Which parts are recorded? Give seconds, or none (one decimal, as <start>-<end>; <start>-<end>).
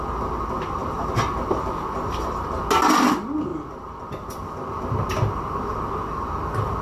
0.0-0.8; 2.5-3.5; 4.7-6.8